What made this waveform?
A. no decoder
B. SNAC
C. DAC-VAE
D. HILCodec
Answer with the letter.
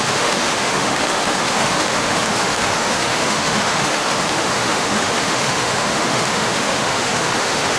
C